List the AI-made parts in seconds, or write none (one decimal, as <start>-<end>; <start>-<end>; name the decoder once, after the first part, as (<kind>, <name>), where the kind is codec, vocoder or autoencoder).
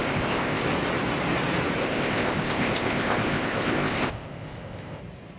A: 0.0-0.6 (codec, ZipCodec); 1.8-5.0